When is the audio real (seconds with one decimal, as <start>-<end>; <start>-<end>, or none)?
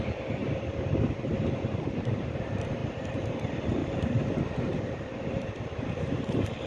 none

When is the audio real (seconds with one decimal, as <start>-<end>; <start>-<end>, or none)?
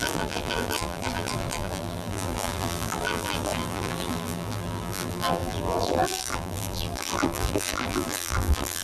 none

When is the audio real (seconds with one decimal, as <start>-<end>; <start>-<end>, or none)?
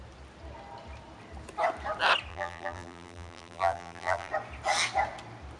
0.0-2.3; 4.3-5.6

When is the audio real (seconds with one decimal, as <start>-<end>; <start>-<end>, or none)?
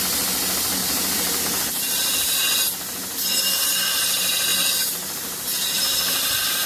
0.0-0.8; 1.4-4.5